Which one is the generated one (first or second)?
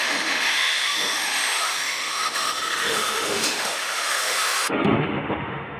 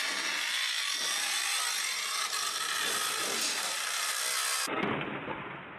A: first